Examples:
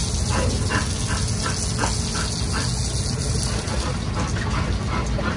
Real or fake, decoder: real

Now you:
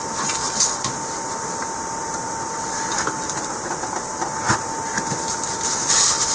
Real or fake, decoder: real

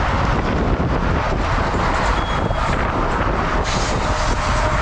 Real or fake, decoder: real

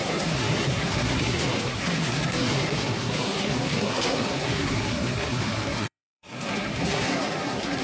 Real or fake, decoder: fake, codec, SNAC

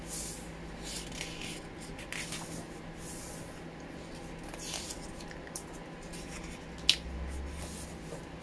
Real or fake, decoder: real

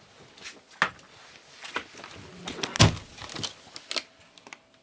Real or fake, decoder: real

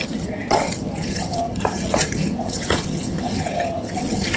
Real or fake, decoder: fake, vocoder, HiFi-GAN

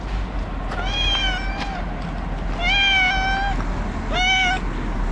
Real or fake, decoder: real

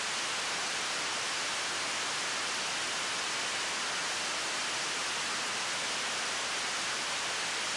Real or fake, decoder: real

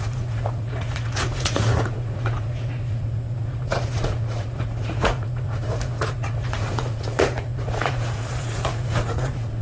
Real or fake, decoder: fake, vocoder, Vocos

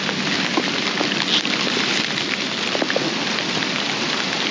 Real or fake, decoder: real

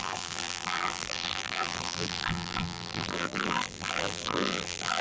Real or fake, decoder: fake, vocoder, BigVGAN v2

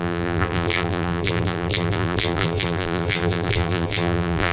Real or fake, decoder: fake, vocoder, BigVGAN v2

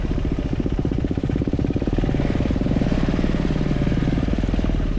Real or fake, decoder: fake, vocoder, BigVGAN v2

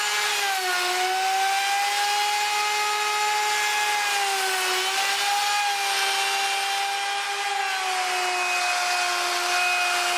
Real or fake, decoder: real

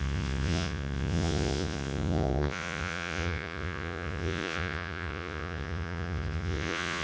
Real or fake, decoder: fake, vocoder, Vocos